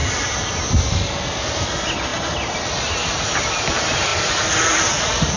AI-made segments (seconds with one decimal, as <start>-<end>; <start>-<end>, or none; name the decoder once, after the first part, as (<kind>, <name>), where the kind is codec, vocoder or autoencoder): none

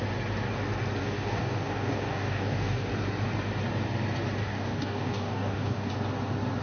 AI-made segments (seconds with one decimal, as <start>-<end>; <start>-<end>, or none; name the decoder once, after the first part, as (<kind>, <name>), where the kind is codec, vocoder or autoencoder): 1.0-2.9 (codec, DAC); 4.4-5.9

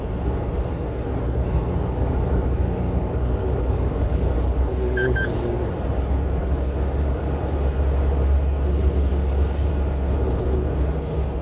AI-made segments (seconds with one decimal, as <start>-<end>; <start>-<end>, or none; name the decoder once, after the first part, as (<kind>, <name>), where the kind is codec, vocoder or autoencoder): 1.8-5.5 (codec, DAC); 6.4-7.4; 9.1-9.7

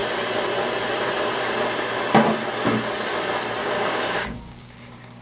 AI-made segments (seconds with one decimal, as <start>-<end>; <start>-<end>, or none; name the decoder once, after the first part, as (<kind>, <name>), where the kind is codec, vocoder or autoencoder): 3.6-5.2 (codec, DAC)

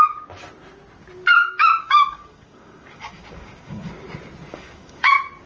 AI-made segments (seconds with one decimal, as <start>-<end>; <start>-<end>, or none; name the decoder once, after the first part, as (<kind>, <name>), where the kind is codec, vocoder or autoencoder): 1.4-3.9 (codec, DAC); 4.5-5.1